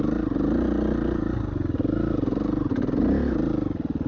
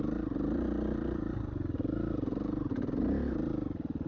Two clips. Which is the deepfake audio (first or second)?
second